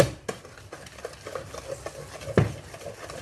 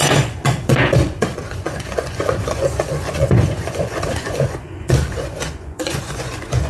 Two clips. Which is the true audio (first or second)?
first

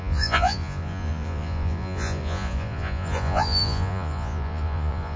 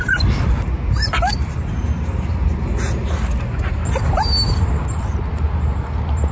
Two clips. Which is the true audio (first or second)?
second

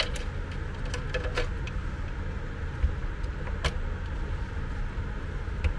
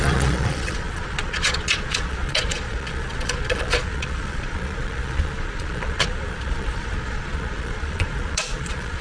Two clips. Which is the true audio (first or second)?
first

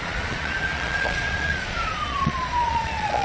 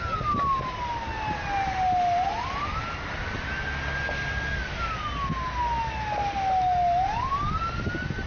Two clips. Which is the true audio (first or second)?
second